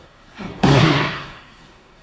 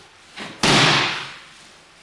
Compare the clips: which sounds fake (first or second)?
first